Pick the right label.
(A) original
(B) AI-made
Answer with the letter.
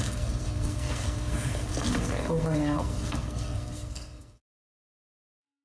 B